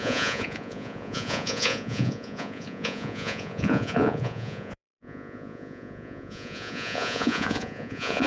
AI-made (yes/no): yes